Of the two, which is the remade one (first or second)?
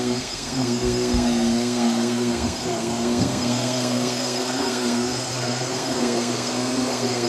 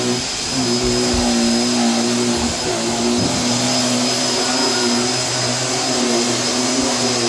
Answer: first